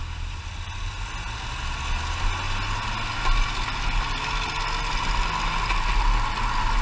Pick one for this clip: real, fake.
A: real